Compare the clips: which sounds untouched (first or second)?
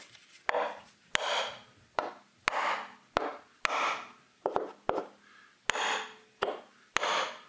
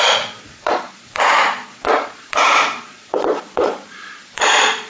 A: first